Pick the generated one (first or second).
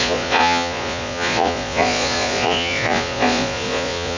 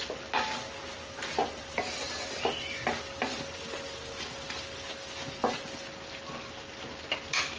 first